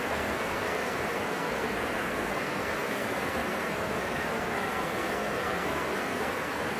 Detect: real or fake fake